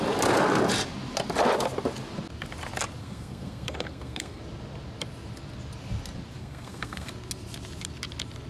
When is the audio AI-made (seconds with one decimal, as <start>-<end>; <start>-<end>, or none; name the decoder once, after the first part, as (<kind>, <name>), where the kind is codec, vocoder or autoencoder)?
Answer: 3.0-4.4 (codec, SNAC); 6.4-7.1

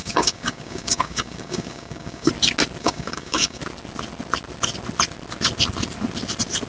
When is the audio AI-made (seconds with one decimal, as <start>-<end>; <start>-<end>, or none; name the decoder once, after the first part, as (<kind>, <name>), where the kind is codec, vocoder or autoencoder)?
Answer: 0.0-2.3 (codec, DAC); 2.8-3.6

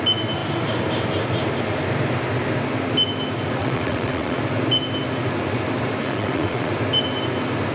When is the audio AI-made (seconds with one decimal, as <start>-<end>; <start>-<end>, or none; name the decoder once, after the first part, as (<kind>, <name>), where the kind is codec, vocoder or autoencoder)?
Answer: 3.6-4.4 (vocoder, WaveNeXt); 6.0-6.7